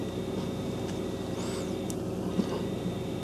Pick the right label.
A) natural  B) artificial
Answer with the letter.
A